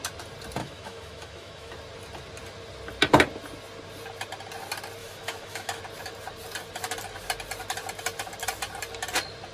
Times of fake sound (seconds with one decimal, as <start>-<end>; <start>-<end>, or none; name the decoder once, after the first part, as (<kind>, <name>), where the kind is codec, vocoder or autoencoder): 0.6-1.7 (autoencoder, DAC-VAE); 5.0-5.8